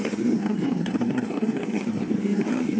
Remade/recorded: remade